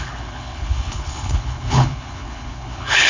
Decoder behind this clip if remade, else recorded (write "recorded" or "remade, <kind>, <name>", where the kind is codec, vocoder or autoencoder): remade, codec, HILCodec